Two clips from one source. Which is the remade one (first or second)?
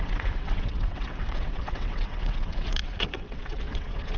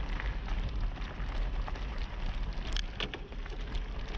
first